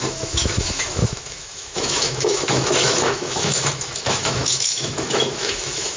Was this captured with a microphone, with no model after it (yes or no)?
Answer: no